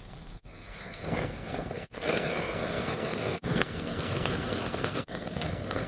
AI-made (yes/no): yes